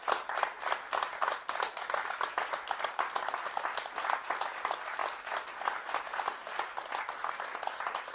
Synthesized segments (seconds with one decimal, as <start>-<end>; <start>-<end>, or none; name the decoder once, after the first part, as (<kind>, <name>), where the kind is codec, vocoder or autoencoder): none